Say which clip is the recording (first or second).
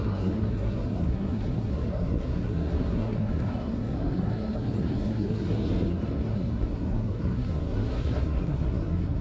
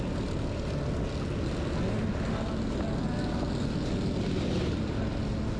second